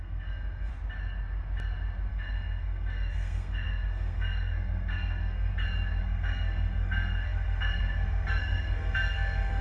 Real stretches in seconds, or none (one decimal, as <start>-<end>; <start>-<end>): 0.7-2.1; 5.5-6.0

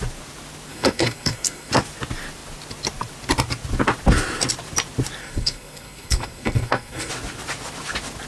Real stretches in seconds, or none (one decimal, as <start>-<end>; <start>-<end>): 0.0-0.7; 1.7-5.2; 7.1-8.3

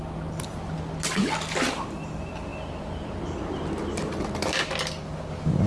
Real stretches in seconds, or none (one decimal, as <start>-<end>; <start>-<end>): 0.0-5.7

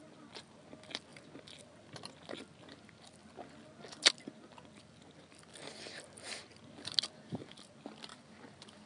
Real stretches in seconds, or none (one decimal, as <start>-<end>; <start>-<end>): 0.0-8.9

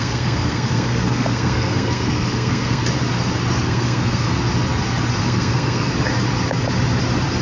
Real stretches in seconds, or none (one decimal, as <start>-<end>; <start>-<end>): 2.8-3.5; 4.3-5.2; 5.9-7.4

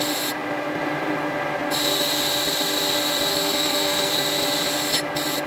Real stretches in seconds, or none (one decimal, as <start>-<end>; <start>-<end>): 0.0-3.3; 4.1-5.5

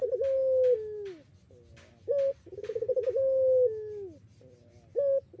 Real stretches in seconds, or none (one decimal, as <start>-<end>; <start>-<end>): 0.0-5.4